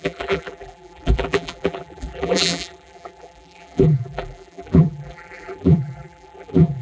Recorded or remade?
remade